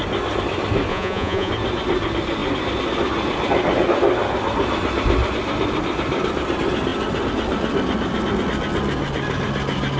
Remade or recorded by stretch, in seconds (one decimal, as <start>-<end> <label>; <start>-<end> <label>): 0.0-0.9 recorded; 0.9-1.5 remade; 1.5-10.0 recorded